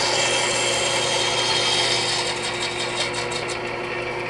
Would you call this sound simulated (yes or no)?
no